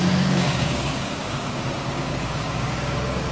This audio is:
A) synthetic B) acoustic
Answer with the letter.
A